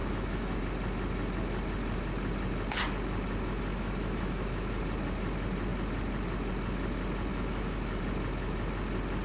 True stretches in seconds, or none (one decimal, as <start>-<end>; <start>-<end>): 0.6-3.7; 4.8-7.3; 8.0-9.2